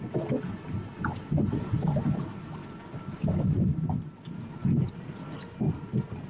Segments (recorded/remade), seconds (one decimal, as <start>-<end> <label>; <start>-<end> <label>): 0.0-6.3 recorded